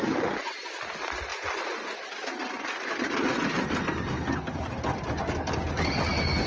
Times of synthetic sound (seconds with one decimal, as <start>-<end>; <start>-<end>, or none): none